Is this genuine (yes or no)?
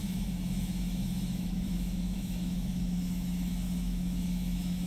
no